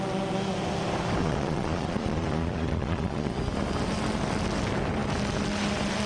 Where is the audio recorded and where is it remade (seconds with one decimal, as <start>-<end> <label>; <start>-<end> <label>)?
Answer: 0.0-1.2 recorded; 1.2-3.4 remade; 3.4-6.1 recorded